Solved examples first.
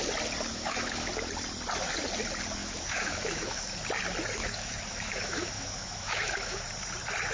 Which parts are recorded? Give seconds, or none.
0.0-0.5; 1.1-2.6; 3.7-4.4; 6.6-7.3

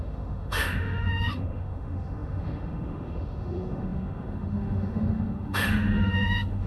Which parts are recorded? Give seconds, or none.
none

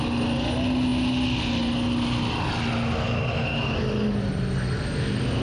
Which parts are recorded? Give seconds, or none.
0.0-5.4

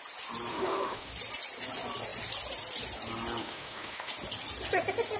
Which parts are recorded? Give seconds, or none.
0.0-0.5; 1.1-3.4; 4.1-5.2

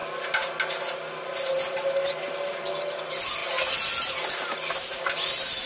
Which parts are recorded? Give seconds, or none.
0.0-5.7